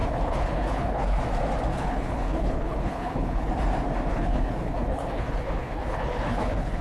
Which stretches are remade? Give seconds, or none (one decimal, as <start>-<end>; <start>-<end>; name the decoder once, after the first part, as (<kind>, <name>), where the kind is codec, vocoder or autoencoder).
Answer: 0.0-1.2 (codec, HILCodec); 1.7-3.5; 4.1-6.8